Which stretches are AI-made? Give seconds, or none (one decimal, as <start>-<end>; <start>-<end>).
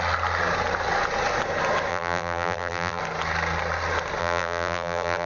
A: 1.9-3.0; 4.2-5.3